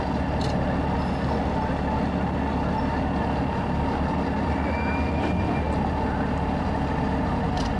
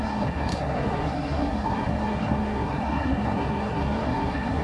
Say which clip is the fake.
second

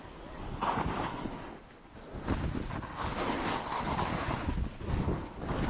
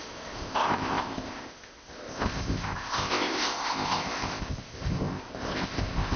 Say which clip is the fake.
second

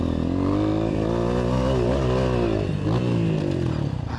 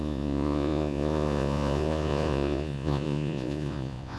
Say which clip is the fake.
second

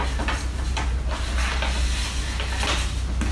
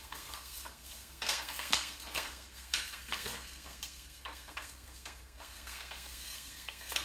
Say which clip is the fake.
second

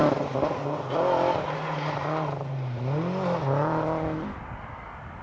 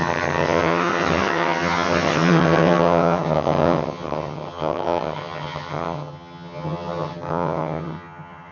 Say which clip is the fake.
second